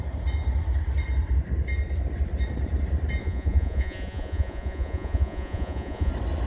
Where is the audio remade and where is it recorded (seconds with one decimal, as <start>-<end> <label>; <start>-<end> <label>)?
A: 0.0-3.2 recorded; 3.2-6.1 remade; 6.1-6.5 recorded